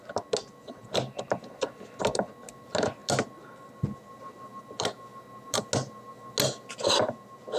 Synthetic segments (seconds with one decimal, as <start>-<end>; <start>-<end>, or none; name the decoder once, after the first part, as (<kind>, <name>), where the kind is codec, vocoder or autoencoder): none

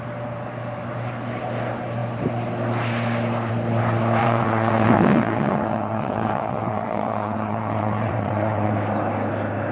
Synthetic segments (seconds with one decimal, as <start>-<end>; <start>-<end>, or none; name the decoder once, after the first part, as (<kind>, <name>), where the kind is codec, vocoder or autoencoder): 4.2-8.7 (vocoder, WaveNeXt)

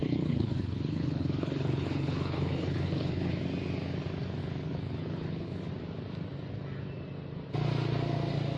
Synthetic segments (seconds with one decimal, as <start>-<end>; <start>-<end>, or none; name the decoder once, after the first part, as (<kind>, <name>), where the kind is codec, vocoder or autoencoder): 0.0-3.3 (codec, HILCodec); 4.4-5.7

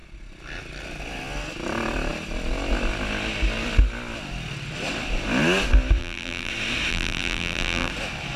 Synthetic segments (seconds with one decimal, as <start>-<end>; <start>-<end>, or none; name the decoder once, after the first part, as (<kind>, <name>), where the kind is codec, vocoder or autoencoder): 6.0-6.5 (vocoder, BigVGAN v2); 6.9-7.9

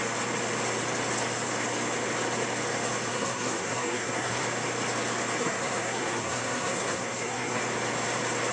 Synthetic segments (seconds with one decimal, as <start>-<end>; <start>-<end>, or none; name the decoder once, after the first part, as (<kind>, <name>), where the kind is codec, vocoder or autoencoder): 3.1-4.4 (codec, SNAC); 5.4-7.6

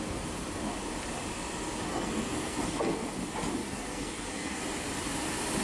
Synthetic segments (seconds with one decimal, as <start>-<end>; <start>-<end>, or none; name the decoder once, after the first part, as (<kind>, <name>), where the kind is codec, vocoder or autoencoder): 1.9-3.1 (codec, SNAC); 3.6-4.6

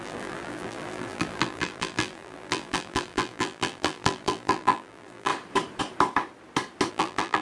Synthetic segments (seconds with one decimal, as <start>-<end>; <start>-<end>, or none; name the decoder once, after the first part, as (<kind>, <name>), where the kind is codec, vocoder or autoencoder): 0.0-5.3 (vocoder, BigVGAN v2); 6.9-7.4

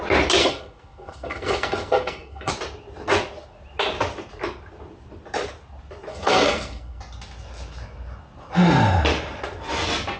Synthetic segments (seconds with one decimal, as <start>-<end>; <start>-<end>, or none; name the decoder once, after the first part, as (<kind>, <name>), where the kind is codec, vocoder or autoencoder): 0.4-2.5 (codec, SNAC); 6.1-7.0